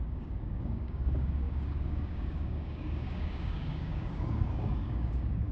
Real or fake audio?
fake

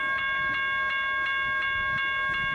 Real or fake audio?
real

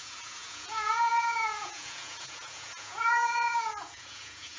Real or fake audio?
fake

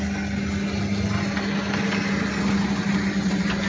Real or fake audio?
real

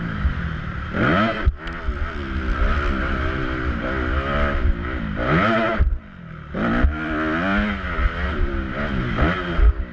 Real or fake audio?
real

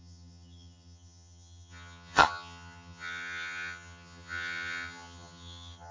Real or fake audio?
fake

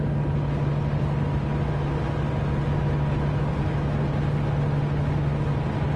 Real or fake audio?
real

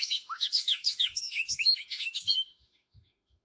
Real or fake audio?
fake